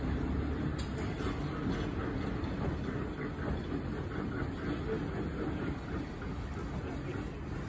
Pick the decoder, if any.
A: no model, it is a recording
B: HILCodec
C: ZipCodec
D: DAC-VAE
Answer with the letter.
A